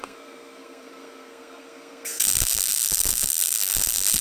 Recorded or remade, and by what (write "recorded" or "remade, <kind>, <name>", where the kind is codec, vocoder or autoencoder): remade, codec, SNAC